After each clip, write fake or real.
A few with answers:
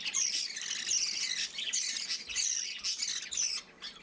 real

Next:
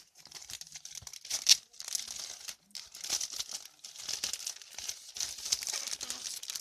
real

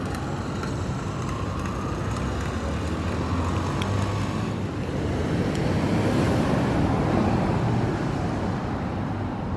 real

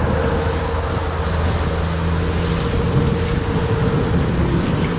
real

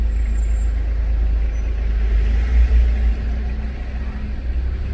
real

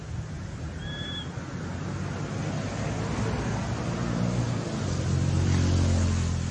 real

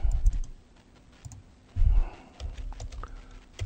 real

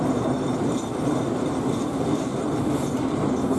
real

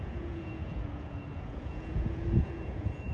fake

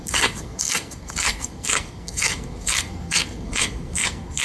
fake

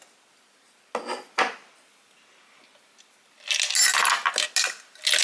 real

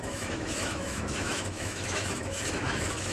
fake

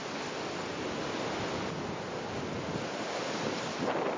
real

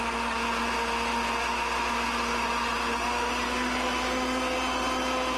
real